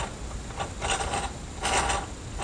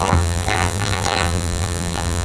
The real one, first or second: first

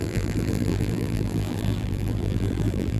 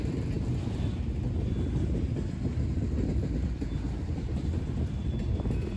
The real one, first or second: second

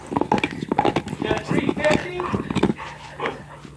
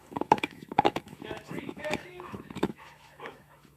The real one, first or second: first